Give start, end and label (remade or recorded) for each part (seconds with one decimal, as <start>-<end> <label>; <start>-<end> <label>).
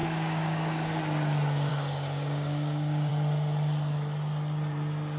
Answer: 0.0-1.0 remade; 1.0-1.7 recorded; 1.7-3.1 remade; 3.1-5.2 recorded